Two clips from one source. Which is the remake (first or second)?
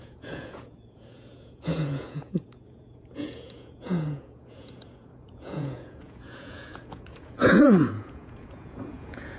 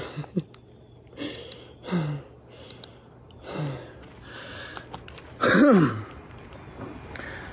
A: first